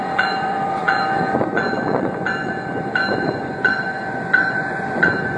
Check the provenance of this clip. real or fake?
fake